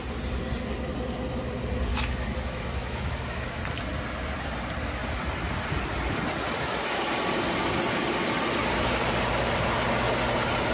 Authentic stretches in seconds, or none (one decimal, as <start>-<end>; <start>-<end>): 0.0-1.9; 3.6-10.7